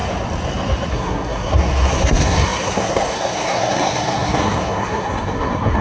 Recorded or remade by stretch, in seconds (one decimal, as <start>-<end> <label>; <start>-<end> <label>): 0.0-0.9 recorded; 0.9-5.8 remade